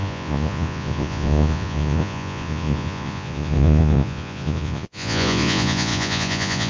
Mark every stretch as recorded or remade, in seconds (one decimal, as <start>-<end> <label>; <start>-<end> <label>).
0.0-6.7 remade